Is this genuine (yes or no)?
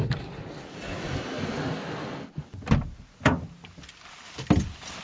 yes